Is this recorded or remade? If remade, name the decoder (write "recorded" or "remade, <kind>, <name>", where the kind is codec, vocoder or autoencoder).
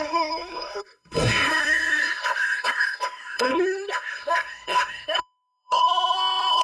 remade, codec, SNAC